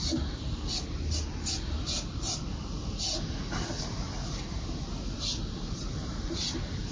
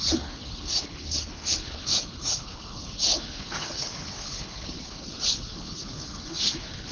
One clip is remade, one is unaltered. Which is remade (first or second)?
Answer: second